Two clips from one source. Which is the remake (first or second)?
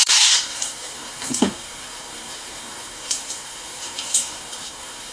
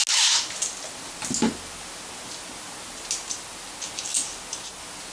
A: first